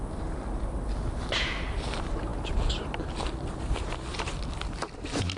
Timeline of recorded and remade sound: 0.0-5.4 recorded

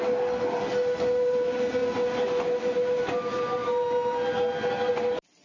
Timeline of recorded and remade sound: 0.0-5.4 recorded

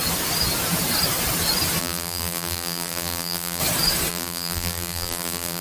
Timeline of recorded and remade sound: 0.0-1.8 recorded; 1.8-3.6 remade; 3.6-4.1 recorded; 4.1-5.6 remade